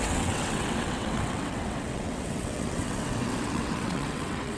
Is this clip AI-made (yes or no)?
yes